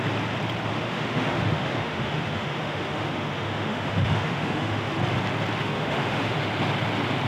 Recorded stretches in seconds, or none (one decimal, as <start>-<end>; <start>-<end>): 0.0-0.7; 4.9-5.6; 6.4-7.3